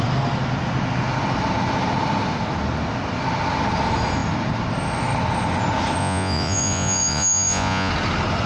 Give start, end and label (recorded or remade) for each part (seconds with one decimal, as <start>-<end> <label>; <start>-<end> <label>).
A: 0.0-6.0 recorded; 6.0-7.9 remade; 7.9-8.5 recorded